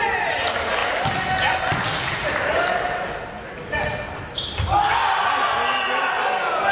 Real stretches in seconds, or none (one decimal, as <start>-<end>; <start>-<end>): 0.0-6.7